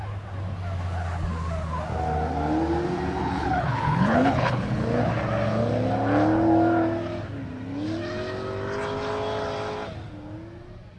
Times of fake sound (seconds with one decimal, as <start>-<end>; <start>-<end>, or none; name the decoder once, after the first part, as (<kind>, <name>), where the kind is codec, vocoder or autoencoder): 3.2-5.0 (codec, HILCodec)

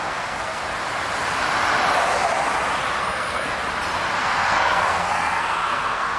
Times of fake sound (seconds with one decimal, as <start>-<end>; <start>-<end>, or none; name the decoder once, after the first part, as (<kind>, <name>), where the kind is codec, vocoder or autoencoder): 0.0-0.6 (codec, SNAC); 3.0-3.6; 4.2-6.2

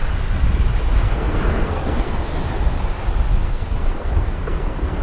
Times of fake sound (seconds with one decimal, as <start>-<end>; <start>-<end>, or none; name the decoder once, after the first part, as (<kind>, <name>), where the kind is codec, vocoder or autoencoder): 0.9-2.3 (codec, SNAC); 3.3-5.0

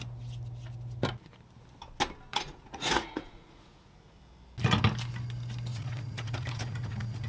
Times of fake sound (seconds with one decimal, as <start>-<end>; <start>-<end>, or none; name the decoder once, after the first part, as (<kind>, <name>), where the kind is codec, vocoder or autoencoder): 2.3-4.2 (vocoder, Vocos); 5.7-7.3

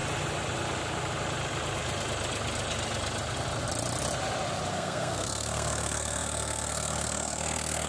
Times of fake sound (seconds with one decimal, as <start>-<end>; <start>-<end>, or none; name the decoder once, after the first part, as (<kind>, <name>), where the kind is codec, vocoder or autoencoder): 4.7-7.9 (codec, SNAC)

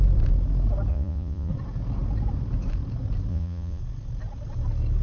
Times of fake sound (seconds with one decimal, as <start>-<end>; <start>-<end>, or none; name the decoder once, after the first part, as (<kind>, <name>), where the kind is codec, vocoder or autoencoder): 0.9-1.5 (vocoder, Vocos); 3.3-3.8

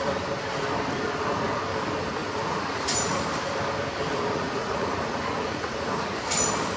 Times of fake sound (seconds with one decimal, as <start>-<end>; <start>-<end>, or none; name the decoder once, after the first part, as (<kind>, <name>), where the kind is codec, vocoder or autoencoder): 2.2-3.2 (vocoder, Vocos); 4.1-6.2

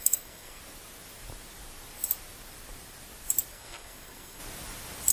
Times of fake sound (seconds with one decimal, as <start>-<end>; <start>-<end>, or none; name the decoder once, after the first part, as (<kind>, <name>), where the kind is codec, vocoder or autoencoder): 0.0-0.6 (codec, SNAC); 3.5-4.4